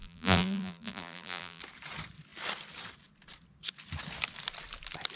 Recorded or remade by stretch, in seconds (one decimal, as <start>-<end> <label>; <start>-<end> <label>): 0.0-1.6 remade; 1.6-5.2 recorded

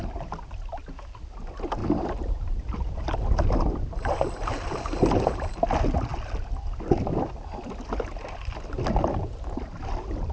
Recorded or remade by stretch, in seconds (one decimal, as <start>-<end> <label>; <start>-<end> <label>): 0.0-1.8 recorded; 1.8-5.5 remade; 5.5-10.3 recorded